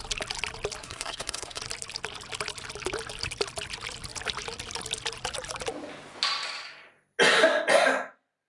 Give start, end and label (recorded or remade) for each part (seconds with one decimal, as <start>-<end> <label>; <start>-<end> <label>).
0.0-0.8 recorded; 0.8-1.6 remade; 1.6-8.5 recorded